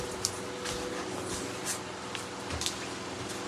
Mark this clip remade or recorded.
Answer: recorded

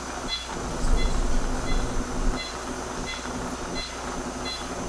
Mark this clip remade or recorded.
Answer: recorded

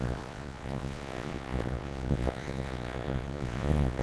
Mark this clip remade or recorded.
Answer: remade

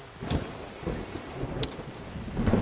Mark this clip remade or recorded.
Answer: recorded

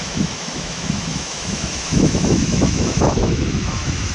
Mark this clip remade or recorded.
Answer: remade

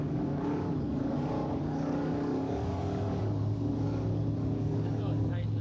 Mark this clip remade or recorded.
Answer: remade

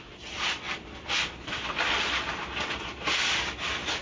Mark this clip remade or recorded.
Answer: recorded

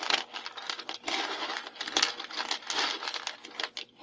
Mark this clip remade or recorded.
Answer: recorded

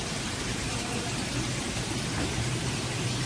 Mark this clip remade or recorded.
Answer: remade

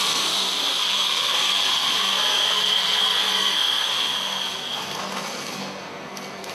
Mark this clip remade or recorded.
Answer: remade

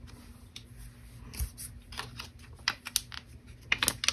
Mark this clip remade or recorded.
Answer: recorded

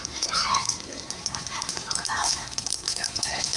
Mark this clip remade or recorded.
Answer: remade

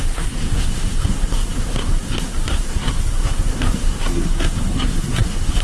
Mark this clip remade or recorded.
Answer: remade